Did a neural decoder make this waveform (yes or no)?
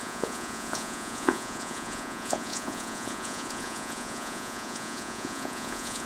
yes